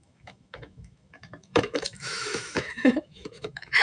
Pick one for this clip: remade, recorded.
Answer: remade